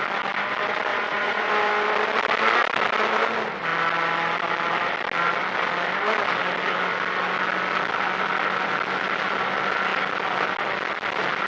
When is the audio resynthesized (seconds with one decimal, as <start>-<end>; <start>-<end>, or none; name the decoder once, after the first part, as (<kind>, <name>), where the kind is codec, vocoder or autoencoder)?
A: 0.9-1.5 (vocoder, Vocos)